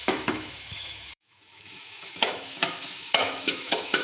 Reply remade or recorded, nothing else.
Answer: remade